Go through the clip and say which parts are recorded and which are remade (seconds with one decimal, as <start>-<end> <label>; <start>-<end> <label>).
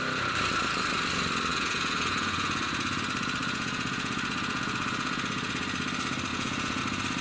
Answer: 0.0-1.5 recorded; 1.5-3.0 remade; 3.0-3.4 recorded; 3.4-5.5 remade; 5.5-6.3 recorded; 6.3-6.8 remade; 6.8-7.2 recorded